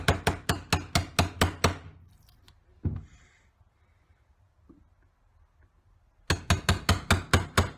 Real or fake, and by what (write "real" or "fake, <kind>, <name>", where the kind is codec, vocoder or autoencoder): real